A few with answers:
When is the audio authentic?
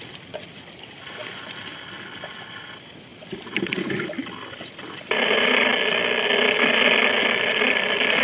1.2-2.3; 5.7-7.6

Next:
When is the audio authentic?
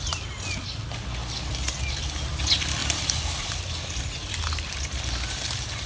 0.0-2.8; 5.0-5.9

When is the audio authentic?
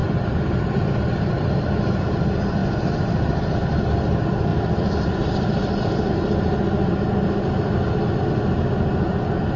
2.0-2.6; 3.8-4.5; 6.1-9.6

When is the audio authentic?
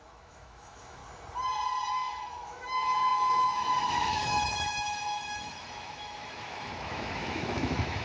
1.0-1.9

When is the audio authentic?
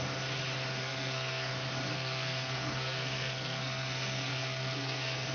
0.0-0.8; 1.5-1.9